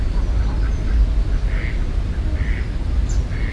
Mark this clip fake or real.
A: real